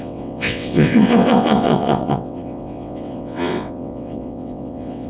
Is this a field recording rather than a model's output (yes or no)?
no